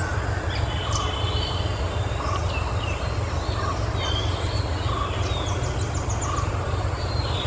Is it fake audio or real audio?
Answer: real